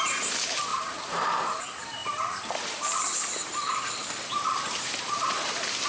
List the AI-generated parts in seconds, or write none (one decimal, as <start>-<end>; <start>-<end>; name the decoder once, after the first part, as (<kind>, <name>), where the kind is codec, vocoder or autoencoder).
0.7-1.6 (vocoder, BigVGAN v2); 2.0-5.5

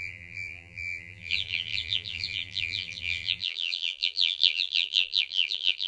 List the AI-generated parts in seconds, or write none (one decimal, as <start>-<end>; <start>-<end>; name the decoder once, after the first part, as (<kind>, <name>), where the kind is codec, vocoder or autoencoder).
0.0-5.9 (vocoder, BigVGAN v2)

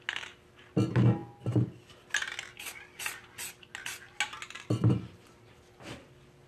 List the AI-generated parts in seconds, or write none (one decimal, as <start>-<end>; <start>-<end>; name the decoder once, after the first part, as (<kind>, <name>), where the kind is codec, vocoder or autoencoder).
none

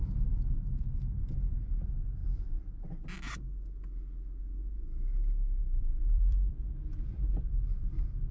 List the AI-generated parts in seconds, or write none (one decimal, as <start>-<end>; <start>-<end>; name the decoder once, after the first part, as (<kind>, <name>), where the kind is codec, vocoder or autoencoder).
5.6-8.3 (vocoder, BigVGAN v2)

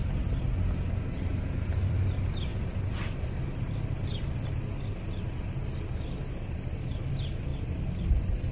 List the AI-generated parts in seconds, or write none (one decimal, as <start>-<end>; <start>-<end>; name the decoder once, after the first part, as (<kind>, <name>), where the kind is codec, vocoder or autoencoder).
1.3-2.1 (vocoder, BigVGAN v2); 7.5-8.0

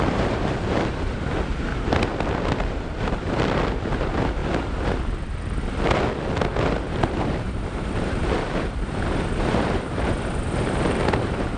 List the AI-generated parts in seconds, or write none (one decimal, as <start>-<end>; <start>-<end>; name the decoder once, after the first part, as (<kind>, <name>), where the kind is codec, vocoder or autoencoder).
0.0-1.7 (vocoder, BigVGAN v2); 2.7-4.4; 6.9-11.6